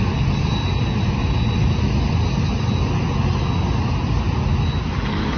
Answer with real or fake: real